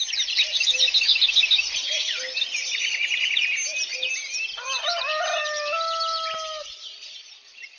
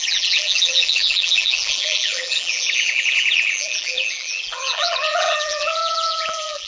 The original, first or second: first